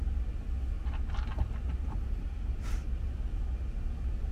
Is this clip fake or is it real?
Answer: real